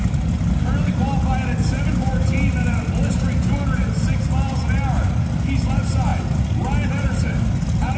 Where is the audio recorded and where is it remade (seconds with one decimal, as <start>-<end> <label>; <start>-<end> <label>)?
0.0-8.0 recorded